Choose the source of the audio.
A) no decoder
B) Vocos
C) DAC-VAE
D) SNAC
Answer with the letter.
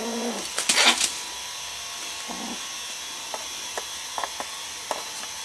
A